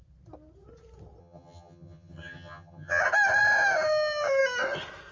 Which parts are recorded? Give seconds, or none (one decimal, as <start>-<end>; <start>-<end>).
0.0-1.2; 3.0-5.1